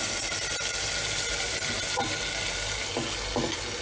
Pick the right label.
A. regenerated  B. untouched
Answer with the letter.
B